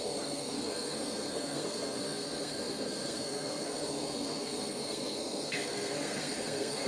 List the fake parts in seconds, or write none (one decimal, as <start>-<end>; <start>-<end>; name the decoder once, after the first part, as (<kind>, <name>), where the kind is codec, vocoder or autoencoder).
0.0-6.9 (codec, SNAC)